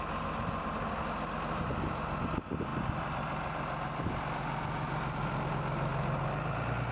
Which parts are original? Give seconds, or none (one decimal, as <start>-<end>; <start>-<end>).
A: 0.0-6.9